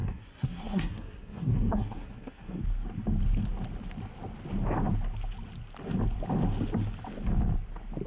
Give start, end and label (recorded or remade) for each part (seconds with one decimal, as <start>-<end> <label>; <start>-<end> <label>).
0.0-2.6 remade; 2.6-8.1 recorded